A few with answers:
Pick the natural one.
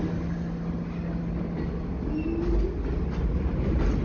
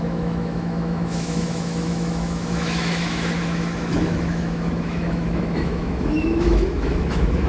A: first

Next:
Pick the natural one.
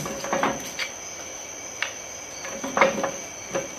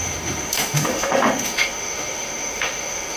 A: first